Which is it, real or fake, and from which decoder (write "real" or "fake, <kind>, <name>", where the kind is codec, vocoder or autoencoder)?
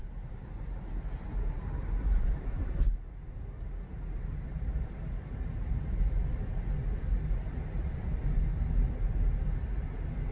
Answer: real